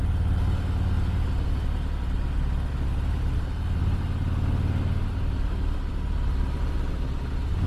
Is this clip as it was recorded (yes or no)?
yes